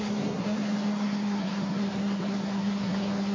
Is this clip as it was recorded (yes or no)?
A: no